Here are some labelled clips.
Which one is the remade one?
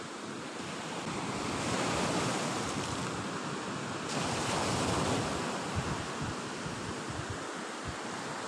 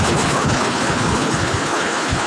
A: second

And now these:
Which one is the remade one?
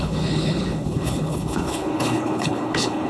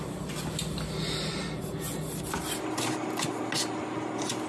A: first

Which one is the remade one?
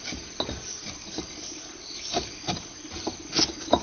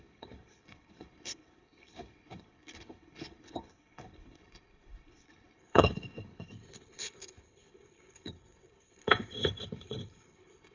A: second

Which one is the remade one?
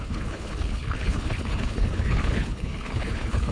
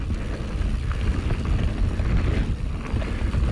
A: first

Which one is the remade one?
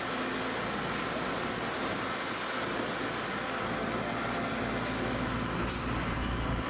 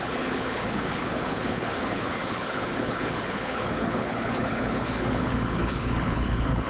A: second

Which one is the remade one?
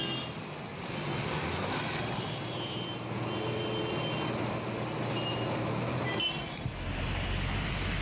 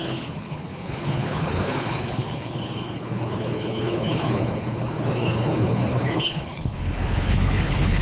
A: second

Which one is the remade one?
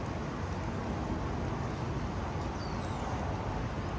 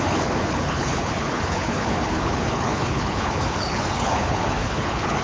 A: second